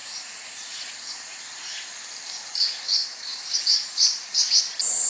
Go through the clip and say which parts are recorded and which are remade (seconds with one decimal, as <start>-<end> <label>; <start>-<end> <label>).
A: 0.0-0.9 remade; 0.9-3.0 recorded; 3.0-4.6 remade; 4.6-5.1 recorded